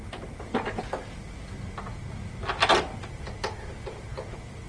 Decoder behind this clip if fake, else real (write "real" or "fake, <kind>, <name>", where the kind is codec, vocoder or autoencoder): real